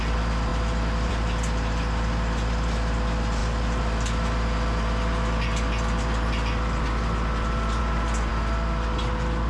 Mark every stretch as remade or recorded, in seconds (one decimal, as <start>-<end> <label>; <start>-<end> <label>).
0.0-9.5 recorded